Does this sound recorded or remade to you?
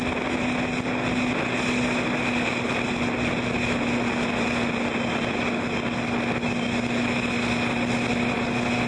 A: recorded